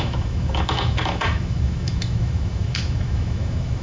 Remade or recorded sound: remade